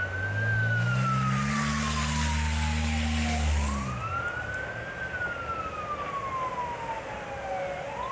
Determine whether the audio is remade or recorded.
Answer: recorded